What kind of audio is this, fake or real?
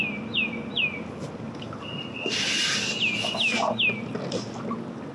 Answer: real